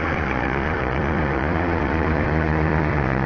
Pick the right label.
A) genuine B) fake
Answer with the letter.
B